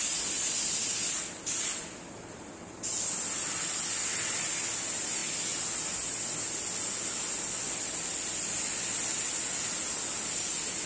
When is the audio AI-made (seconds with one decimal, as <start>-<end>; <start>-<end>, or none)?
none